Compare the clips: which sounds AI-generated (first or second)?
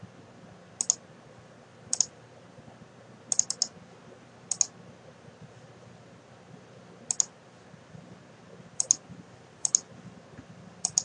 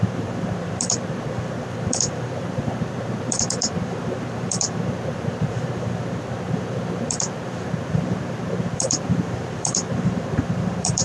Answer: second